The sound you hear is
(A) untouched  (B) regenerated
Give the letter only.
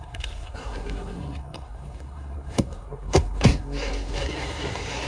B